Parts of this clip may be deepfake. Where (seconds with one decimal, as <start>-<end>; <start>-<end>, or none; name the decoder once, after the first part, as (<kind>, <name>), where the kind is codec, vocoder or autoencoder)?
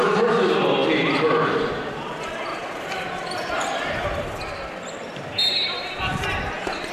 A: 2.5-6.9 (vocoder, BigVGAN v2)